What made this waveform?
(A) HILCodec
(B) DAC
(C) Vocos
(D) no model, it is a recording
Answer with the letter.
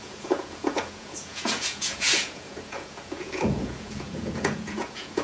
C